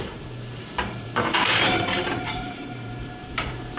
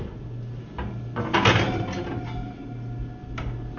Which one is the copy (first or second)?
first